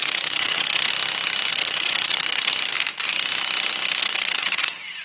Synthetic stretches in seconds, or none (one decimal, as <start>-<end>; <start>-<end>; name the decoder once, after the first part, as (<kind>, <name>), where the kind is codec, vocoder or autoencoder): 0.0-0.9 (vocoder, WaveNeXt); 1.5-2.5; 4.0-5.0